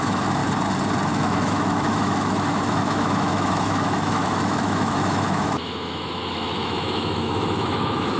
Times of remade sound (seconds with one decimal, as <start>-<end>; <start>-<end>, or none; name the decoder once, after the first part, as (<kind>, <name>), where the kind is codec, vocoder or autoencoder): 0.0-0.4 (autoencoder, DAC-VAE); 1.1-8.2